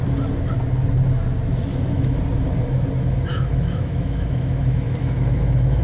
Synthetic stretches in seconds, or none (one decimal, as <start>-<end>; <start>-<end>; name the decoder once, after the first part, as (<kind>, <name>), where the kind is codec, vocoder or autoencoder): 1.7-2.2 (autoencoder, DAC-VAE); 3.3-5.8